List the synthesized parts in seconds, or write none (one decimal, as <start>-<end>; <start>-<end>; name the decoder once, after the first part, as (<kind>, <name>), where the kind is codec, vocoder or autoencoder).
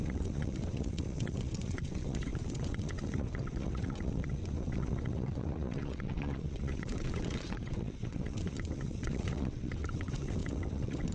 0.0-11.1 (vocoder, WaveNeXt)